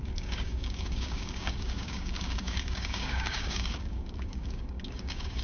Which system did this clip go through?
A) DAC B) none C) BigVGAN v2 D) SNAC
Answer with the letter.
A